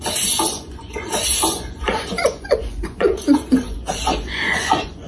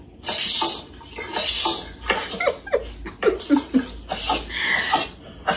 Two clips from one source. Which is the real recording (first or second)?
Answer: second